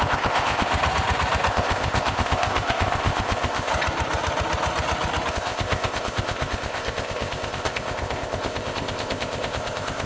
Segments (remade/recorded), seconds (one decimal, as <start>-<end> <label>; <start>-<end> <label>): 0.0-0.7 remade; 0.7-1.5 recorded; 1.5-3.7 remade; 3.7-5.3 recorded; 5.3-10.1 remade